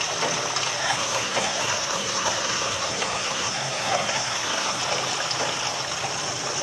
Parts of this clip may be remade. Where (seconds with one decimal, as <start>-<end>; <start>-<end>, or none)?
0.8-4.8